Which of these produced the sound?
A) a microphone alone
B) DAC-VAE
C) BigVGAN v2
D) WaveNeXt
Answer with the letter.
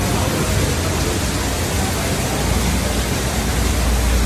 A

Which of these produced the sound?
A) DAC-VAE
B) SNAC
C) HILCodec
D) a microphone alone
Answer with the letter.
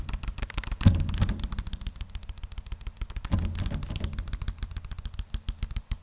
D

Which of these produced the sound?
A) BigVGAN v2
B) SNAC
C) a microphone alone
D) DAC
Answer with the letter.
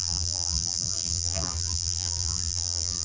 A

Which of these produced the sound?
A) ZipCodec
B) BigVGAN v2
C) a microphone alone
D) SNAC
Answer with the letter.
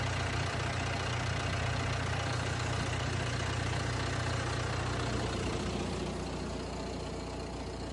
C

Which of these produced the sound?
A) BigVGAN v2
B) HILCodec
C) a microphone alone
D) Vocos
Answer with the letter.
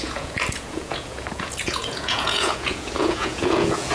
D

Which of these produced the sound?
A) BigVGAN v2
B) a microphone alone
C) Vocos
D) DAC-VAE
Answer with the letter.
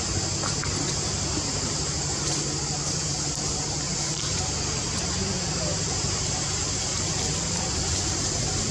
B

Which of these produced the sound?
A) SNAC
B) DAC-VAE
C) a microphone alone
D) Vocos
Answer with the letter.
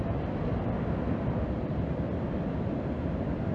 C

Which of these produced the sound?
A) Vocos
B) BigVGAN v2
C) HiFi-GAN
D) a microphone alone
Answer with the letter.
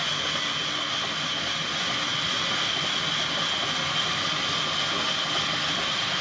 D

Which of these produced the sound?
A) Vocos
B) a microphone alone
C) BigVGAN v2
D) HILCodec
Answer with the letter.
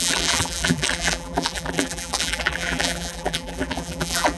C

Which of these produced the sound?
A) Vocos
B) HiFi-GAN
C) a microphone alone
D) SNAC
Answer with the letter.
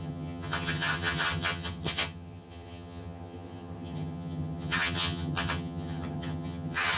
B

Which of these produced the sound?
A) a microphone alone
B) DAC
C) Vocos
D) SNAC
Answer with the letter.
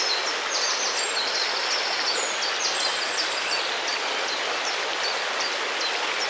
A